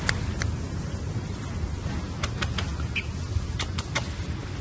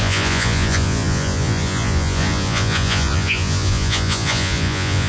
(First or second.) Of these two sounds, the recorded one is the first